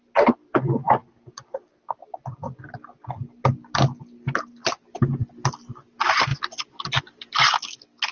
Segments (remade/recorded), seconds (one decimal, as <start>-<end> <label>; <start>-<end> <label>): 0.0-8.1 recorded